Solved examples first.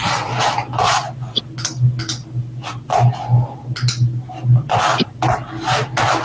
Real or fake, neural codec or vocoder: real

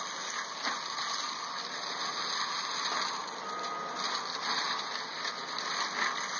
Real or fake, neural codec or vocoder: real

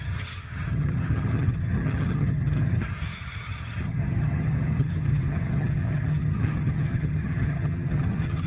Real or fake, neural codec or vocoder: fake, vocoder, HiFi-GAN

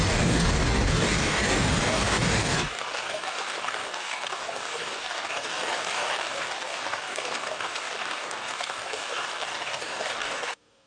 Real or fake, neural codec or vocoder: fake, codec, DAC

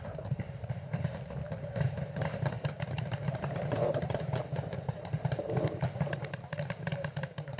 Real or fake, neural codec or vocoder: fake, vocoder, BigVGAN v2